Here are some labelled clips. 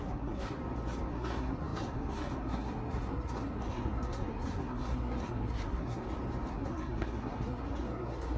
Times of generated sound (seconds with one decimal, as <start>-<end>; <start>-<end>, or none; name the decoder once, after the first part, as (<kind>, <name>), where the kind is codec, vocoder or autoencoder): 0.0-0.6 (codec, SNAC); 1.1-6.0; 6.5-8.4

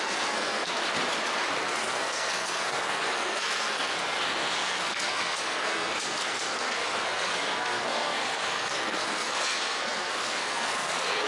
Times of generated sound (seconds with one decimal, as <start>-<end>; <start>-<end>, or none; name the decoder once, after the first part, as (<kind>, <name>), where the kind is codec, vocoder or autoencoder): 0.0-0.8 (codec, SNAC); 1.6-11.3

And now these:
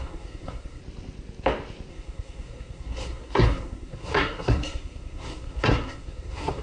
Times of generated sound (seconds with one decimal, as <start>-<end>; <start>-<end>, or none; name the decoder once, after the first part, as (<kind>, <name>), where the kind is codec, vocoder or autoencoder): 0.0-0.8 (codec, SNAC); 1.9-6.6

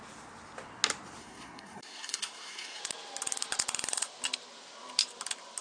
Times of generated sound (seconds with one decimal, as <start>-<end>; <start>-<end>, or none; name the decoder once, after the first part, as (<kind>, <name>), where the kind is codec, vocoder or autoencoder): 1.2-2.8 (codec, SNAC)

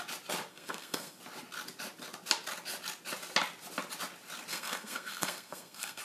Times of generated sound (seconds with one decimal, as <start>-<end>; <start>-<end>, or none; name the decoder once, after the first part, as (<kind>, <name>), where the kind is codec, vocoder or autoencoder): 0.5-1.2 (codec, SNAC); 4.5-6.0

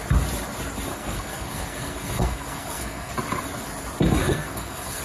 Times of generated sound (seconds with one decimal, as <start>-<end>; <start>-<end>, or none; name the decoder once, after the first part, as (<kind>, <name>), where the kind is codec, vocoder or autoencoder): 0.9-3.1 (codec, SNAC); 4.2-5.0

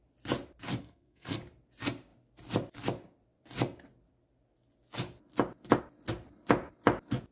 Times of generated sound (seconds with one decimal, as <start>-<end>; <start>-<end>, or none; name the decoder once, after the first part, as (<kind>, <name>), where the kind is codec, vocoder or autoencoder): 0.8-1.4 (codec, SNAC)

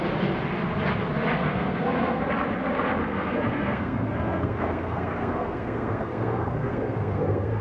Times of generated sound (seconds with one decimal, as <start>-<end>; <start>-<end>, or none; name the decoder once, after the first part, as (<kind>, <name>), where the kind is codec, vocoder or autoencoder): 1.4-2.2 (codec, SNAC); 3.0-7.6